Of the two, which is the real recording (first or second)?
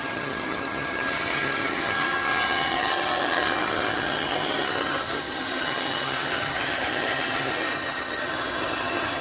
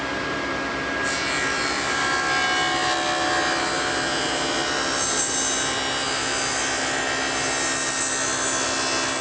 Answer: second